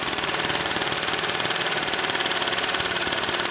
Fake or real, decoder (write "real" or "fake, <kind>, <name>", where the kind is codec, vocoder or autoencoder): fake, vocoder, Vocos